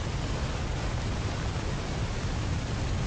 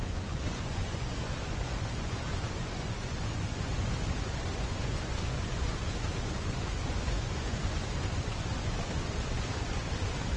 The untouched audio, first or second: first